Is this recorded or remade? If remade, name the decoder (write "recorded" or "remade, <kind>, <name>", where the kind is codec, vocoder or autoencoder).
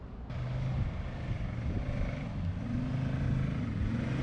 recorded